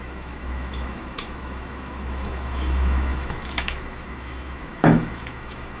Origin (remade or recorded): remade